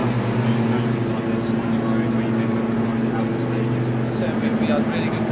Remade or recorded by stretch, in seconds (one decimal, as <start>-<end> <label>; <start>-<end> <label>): 0.0-5.3 recorded